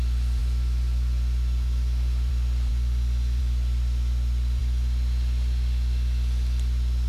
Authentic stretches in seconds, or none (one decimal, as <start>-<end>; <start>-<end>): 0.0-0.4; 2.3-7.1